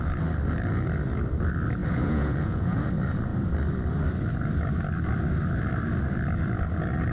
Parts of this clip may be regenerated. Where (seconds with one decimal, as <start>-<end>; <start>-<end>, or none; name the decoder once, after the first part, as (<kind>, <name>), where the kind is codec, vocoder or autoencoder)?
1.8-2.9 (vocoder, Vocos)